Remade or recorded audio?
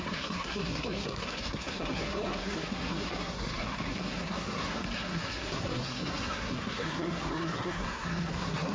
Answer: remade